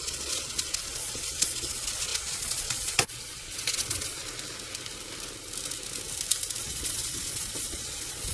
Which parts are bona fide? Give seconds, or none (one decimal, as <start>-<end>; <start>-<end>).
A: 4.2-6.6